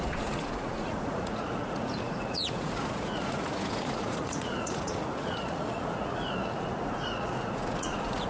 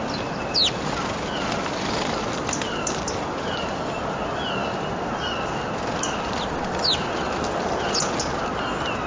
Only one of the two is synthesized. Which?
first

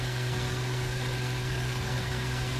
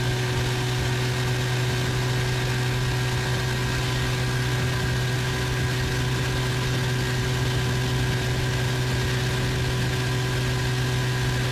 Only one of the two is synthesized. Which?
first